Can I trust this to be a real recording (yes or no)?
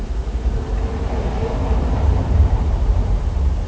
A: no